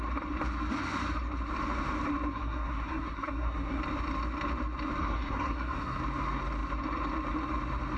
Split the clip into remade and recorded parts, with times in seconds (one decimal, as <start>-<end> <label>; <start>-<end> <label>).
0.0-2.3 recorded; 2.3-3.8 remade; 3.8-5.0 recorded; 5.0-6.0 remade; 6.0-8.0 recorded